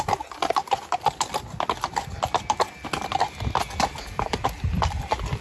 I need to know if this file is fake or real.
real